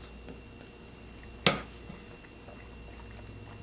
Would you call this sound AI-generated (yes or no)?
no